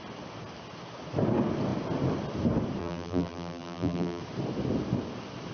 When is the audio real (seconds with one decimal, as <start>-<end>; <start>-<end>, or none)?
0.0-2.8; 4.2-5.5